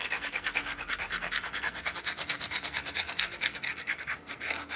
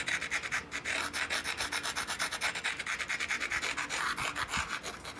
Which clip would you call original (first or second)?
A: second